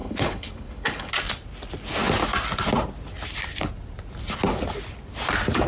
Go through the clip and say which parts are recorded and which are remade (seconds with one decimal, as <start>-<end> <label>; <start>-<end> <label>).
0.0-1.1 remade; 1.1-5.7 recorded